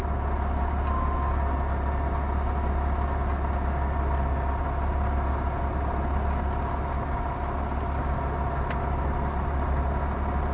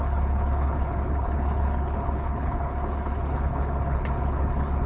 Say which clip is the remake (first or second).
second